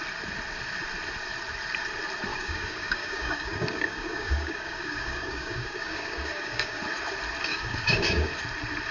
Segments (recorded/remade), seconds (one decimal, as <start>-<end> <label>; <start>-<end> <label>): 0.0-2.3 recorded; 2.3-6.8 remade; 6.8-7.5 recorded; 7.5-8.3 remade; 8.3-8.9 recorded